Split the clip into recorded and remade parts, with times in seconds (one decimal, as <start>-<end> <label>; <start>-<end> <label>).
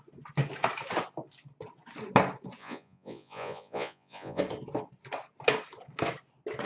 0.0-2.6 recorded; 2.6-4.4 remade; 4.4-6.7 recorded